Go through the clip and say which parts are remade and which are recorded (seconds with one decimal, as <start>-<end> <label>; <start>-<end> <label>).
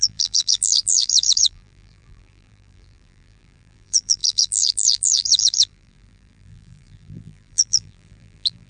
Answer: 0.0-8.7 remade